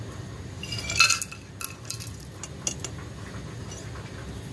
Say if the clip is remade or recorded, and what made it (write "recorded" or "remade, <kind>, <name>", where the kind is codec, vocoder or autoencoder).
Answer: recorded